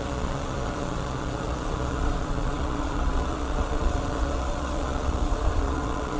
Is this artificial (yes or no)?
yes